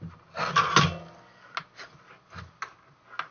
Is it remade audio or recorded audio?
recorded